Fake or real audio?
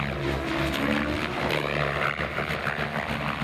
real